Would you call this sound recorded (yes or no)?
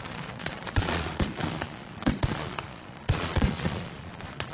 no